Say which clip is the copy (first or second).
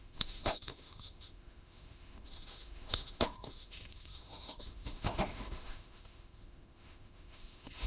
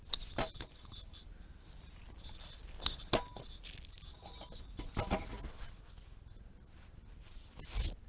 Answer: first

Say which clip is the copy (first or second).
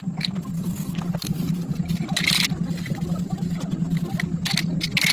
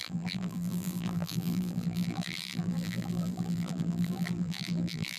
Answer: second